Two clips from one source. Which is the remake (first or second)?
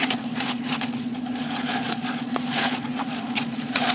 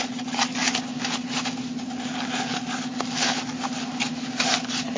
first